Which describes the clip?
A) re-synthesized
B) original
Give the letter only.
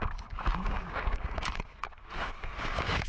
A